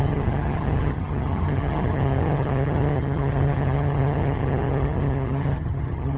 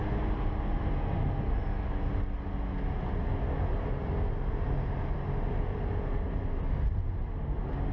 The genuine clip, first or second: second